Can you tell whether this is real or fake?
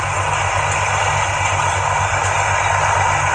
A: real